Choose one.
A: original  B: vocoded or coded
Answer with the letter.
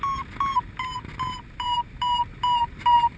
A